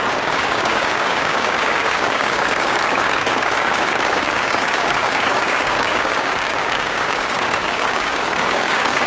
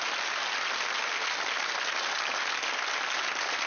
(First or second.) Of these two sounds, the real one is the second